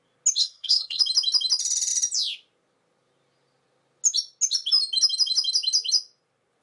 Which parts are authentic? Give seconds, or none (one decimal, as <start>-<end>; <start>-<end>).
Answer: 0.0-0.4; 1.0-6.6